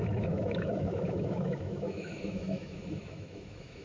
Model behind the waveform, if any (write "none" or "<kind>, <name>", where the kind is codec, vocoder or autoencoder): autoencoder, DAC-VAE